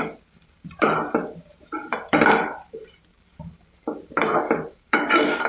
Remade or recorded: remade